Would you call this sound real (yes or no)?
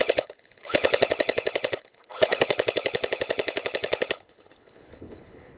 no